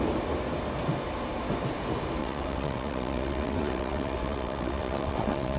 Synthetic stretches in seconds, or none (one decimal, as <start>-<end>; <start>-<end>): 2.2-5.6